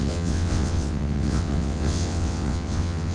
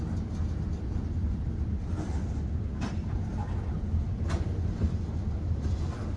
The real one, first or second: second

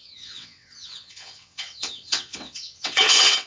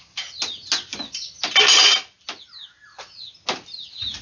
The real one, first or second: second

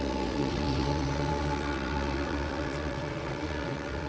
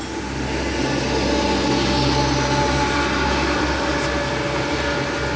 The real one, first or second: second